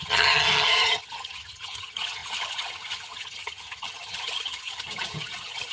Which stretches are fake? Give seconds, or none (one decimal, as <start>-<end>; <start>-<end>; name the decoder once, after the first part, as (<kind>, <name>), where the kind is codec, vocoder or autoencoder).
0.0-5.7 (vocoder, HiFi-GAN)

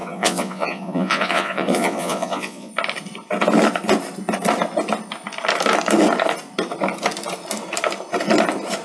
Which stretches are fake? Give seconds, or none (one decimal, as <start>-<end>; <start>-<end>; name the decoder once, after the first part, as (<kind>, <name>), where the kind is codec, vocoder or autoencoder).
0.0-2.7 (vocoder, Vocos)

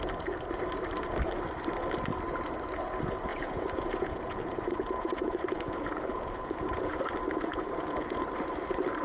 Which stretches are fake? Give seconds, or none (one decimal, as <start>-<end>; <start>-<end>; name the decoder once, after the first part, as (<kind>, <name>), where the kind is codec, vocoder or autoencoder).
3.3-7.0 (vocoder, Vocos); 7.5-8.3